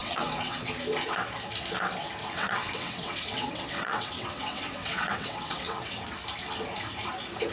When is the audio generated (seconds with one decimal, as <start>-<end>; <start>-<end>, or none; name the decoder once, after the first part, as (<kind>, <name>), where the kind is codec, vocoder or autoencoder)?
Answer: 0.0-0.7 (vocoder, WaveNeXt); 2.2-6.2